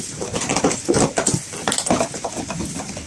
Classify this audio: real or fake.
real